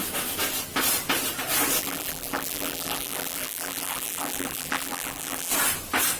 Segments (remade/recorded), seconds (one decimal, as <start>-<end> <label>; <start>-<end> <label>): 0.0-1.8 recorded; 1.8-5.5 remade; 5.5-6.2 recorded